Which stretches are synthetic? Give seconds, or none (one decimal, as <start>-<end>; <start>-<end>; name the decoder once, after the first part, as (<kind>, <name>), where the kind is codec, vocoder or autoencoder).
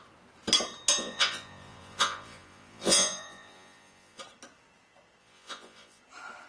1.0-4.2 (vocoder, Vocos); 5.2-6.0